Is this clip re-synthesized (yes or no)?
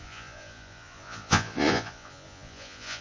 yes